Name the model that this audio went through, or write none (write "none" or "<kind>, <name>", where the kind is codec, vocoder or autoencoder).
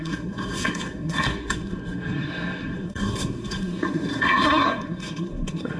codec, SNAC